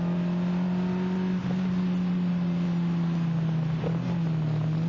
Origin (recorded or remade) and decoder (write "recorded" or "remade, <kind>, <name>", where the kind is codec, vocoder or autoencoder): recorded